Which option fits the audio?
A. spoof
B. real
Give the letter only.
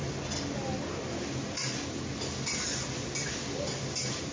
B